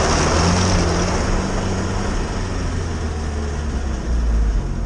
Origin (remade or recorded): recorded